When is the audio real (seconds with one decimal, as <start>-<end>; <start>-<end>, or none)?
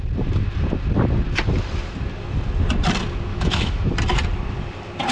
0.0-3.3; 3.9-5.1